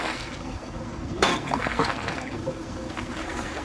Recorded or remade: remade